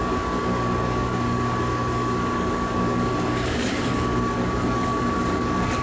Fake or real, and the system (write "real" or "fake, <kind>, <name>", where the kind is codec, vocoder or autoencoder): fake, codec, DAC